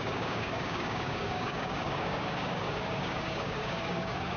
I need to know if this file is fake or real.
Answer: fake